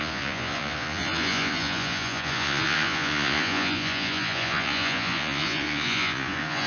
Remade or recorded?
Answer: remade